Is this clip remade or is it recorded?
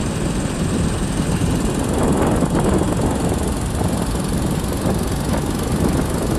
recorded